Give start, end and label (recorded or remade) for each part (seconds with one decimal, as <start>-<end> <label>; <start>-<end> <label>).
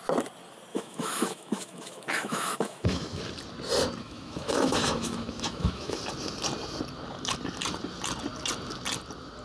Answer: 0.0-0.7 recorded; 0.7-3.2 remade; 3.2-4.0 recorded; 4.0-6.0 remade; 6.0-9.4 recorded